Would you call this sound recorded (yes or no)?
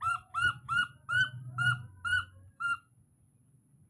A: yes